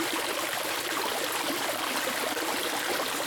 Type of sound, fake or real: real